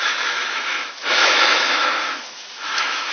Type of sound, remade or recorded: remade